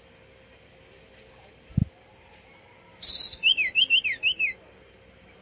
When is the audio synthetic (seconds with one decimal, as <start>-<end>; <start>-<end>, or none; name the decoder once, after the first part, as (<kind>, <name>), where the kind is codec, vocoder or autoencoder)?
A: 1.8-3.1 (vocoder, BigVGAN v2)